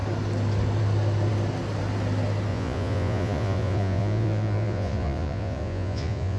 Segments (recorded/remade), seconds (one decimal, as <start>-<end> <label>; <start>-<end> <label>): 0.0-2.5 recorded; 2.5-6.4 remade